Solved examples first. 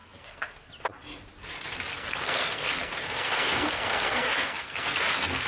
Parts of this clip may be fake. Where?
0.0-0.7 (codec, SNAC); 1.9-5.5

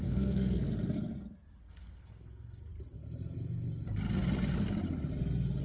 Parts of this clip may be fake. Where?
0.0-0.7 (codec, SNAC); 1.6-2.7

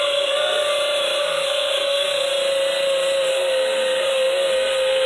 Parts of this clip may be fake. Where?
0.0-0.7 (codec, SNAC); 1.2-2.3; 3.3-5.1

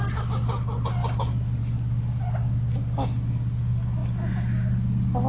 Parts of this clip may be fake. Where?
none

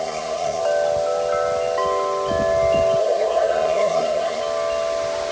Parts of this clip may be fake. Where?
0.0-0.6 (codec, SNAC); 3.0-4.4